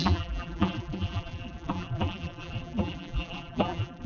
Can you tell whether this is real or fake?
fake